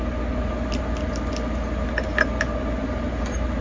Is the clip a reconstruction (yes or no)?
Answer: no